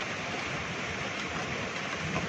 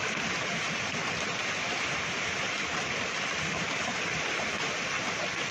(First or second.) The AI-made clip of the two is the second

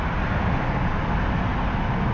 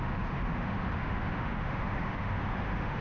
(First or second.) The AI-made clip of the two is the second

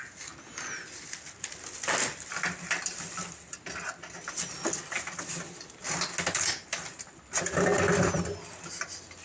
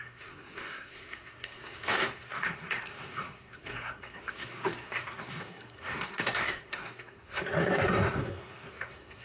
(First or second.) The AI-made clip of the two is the second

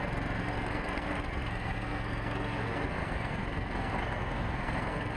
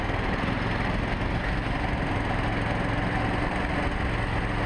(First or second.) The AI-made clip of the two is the first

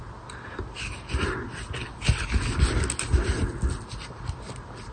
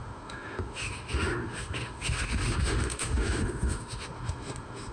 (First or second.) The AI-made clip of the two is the second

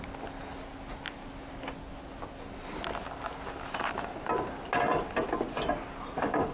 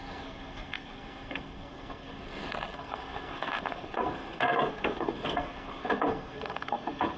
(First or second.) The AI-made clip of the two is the second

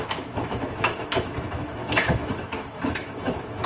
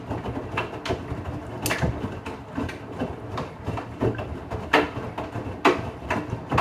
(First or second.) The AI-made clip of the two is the first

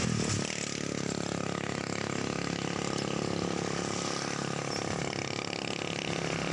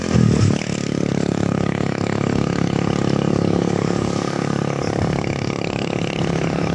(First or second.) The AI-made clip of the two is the second